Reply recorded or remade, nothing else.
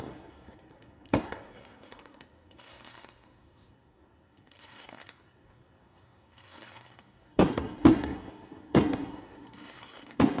remade